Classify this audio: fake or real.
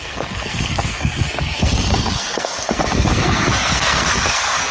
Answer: fake